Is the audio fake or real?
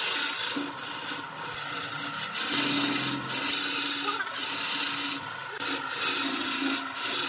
real